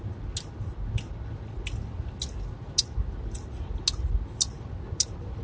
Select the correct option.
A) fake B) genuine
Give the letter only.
B